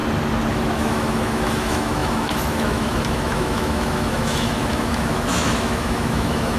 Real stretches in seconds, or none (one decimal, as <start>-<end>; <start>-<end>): 0.0-0.5